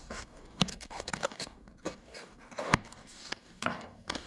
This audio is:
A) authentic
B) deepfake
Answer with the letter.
B